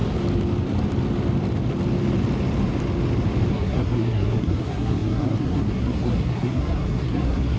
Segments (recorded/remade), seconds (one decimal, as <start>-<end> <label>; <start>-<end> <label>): 0.0-3.5 recorded; 3.5-7.6 remade